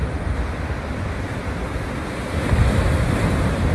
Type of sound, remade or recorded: recorded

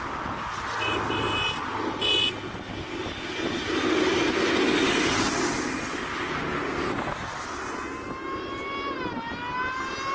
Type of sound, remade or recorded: recorded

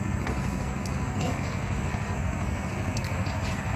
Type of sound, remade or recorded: remade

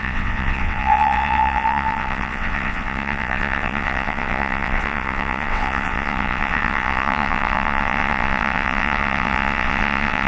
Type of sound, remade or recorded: remade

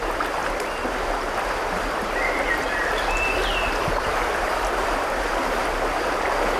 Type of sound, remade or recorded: recorded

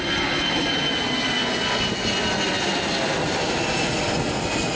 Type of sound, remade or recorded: recorded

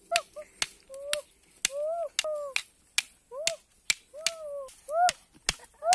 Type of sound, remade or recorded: recorded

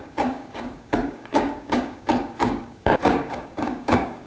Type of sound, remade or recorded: remade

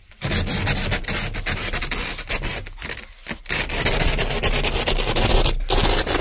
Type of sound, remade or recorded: recorded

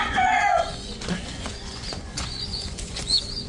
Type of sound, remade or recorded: remade